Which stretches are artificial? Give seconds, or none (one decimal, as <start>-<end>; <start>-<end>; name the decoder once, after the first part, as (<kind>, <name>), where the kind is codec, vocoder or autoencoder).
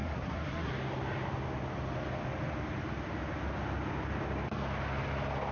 0.0-0.7 (codec, SNAC)